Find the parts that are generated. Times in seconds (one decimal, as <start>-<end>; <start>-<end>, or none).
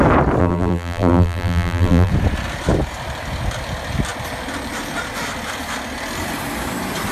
0.4-2.1